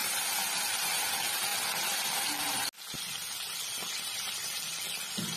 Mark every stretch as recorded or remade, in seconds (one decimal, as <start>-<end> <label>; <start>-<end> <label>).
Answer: 0.0-5.4 recorded